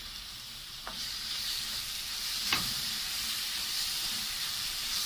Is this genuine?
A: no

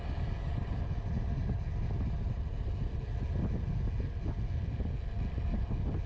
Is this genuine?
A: yes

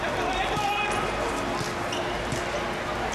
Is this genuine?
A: yes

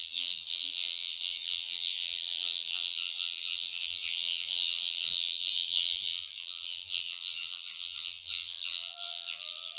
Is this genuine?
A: no